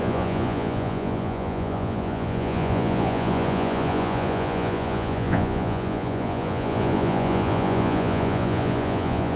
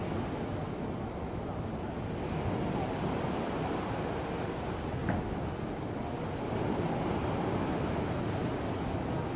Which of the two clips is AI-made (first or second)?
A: first